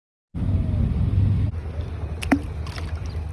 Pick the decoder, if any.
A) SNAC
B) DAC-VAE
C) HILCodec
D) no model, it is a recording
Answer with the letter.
D